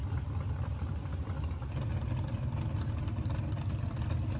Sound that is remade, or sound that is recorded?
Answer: recorded